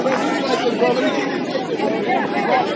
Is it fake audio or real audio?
real